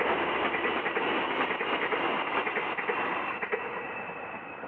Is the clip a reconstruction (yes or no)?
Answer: no